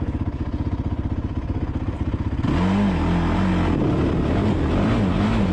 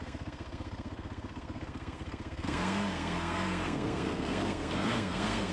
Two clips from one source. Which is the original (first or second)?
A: first